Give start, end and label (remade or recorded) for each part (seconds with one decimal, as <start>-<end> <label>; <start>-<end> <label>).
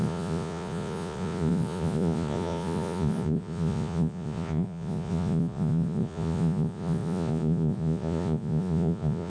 0.0-9.3 remade